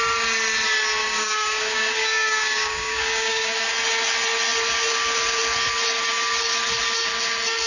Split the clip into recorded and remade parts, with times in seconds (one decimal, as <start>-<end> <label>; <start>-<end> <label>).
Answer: 0.0-1.0 recorded; 1.0-3.7 remade; 3.7-7.7 recorded